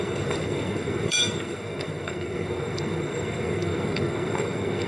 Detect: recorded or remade remade